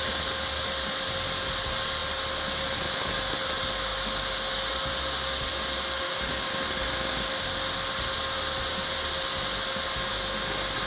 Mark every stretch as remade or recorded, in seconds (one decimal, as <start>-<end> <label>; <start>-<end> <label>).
0.0-10.9 recorded